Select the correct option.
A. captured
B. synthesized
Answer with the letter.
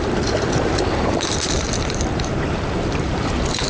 B